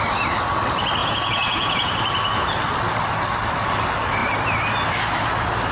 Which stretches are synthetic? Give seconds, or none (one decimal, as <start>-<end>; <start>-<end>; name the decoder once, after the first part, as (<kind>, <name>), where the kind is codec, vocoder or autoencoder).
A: 1.0-1.9 (vocoder, Vocos)